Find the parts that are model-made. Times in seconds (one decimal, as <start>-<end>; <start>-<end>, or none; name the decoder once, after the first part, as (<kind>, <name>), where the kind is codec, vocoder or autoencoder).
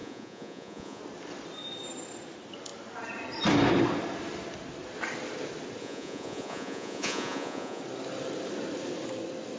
0.0-1.0 (vocoder, Vocos); 5.8-7.8